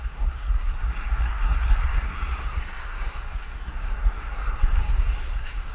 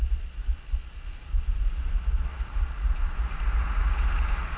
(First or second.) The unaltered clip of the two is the second